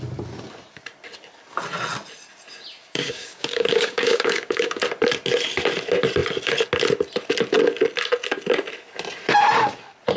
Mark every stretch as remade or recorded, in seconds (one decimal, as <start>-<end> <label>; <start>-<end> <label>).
0.0-2.8 recorded; 2.8-4.8 remade; 4.8-10.2 recorded